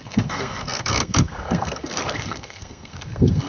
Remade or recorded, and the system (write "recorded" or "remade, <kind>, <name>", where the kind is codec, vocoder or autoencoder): remade, codec, SNAC